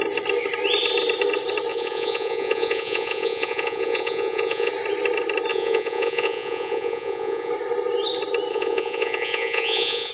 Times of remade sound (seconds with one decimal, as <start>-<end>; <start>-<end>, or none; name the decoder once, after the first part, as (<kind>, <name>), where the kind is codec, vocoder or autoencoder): 1.7-4.7 (vocoder, Vocos); 5.5-7.5; 8.5-10.1